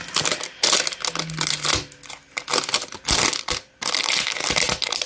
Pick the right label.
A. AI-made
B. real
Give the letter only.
B